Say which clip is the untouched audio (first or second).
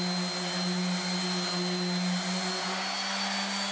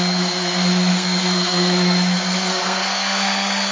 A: first